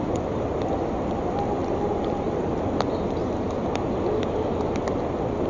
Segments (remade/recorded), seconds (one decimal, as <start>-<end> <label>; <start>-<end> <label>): 0.0-5.5 recorded